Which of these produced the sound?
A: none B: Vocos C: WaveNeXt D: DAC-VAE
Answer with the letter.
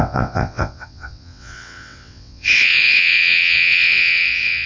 C